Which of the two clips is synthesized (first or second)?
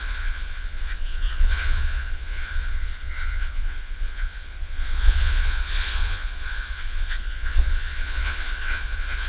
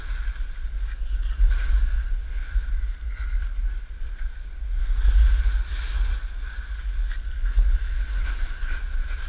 first